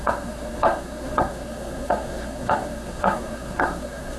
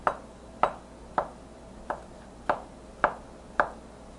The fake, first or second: first